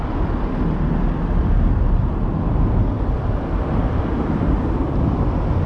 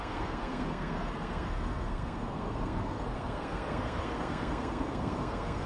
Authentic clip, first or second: first